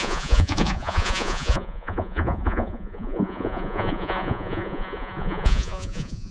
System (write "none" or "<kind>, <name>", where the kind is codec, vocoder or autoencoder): vocoder, Vocos